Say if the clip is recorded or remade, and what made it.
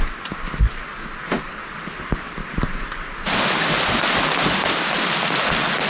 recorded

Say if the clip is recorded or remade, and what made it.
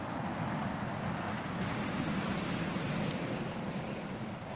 remade, vocoder, BigVGAN v2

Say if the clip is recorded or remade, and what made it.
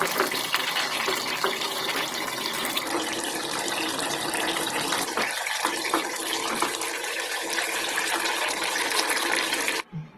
remade, vocoder, BigVGAN v2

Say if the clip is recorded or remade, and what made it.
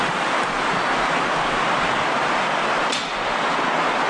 recorded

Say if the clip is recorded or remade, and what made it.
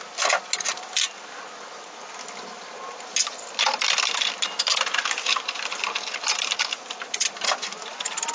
recorded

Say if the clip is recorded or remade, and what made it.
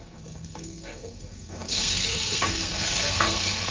remade, codec, SNAC